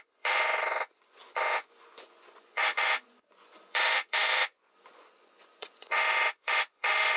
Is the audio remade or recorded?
remade